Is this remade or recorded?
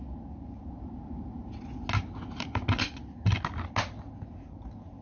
recorded